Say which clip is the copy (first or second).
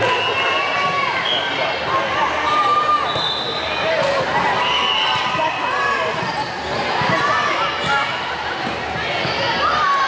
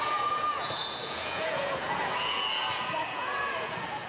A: second